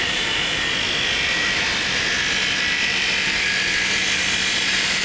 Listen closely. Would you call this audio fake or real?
real